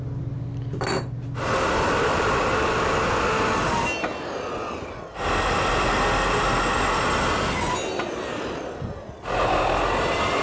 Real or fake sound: real